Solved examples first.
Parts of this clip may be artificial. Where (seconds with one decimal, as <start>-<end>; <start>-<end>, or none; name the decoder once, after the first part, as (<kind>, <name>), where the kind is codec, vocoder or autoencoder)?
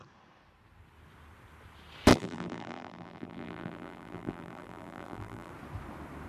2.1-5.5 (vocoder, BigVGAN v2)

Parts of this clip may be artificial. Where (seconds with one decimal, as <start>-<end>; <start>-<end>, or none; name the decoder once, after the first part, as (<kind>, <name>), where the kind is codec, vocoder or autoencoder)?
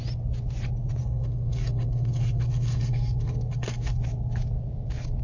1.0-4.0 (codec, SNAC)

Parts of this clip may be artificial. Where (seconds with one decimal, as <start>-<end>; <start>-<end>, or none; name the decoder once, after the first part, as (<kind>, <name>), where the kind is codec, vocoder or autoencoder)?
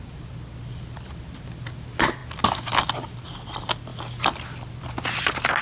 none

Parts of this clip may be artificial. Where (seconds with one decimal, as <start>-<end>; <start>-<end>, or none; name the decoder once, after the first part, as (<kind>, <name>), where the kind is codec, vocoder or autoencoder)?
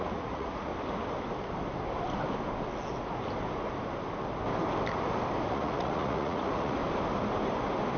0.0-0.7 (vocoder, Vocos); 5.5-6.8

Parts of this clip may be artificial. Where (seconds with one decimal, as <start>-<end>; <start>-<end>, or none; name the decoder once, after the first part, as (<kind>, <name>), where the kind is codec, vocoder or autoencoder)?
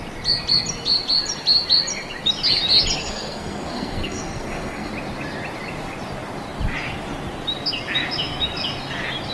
3.0-4.9 (codec, SNAC)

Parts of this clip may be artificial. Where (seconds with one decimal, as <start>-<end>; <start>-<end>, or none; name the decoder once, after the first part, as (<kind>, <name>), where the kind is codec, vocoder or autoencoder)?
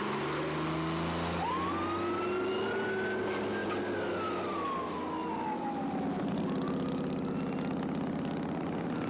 none